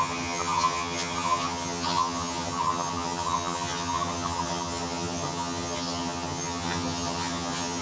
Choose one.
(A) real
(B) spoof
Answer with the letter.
B